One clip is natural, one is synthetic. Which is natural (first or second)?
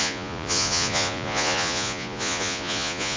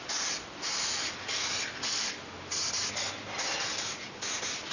second